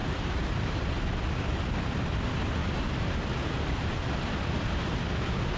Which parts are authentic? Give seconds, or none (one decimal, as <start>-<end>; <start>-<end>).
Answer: 1.2-2.6; 4.2-5.6